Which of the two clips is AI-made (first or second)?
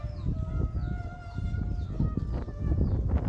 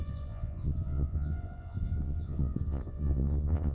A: second